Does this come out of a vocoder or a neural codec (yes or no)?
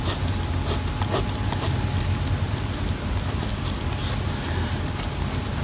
no